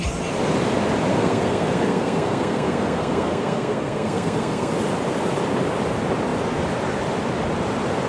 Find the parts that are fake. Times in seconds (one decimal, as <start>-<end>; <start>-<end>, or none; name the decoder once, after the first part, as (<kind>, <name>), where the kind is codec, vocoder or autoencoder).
1.1-4.7 (codec, SNAC)